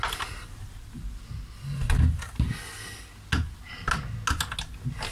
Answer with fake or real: real